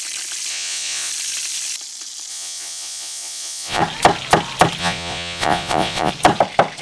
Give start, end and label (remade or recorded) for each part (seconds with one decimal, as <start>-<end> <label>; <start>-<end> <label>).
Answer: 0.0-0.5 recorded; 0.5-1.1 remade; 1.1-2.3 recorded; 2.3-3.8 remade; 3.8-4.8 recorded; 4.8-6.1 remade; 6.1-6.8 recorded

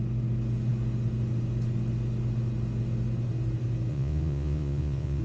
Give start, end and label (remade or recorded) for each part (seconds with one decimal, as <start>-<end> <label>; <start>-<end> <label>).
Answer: 0.0-3.9 recorded; 3.9-5.2 remade

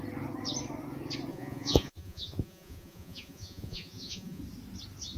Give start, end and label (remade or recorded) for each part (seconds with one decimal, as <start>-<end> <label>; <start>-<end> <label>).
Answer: 0.0-1.3 recorded; 1.3-4.4 remade; 4.4-5.2 recorded

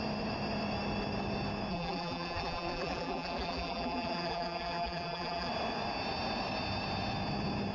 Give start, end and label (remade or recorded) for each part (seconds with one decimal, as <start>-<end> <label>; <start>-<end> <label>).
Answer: 0.0-1.7 recorded; 1.7-5.5 remade; 5.5-7.7 recorded